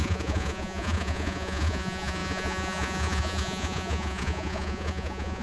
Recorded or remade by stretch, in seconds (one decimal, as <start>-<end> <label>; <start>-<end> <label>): 0.0-5.4 remade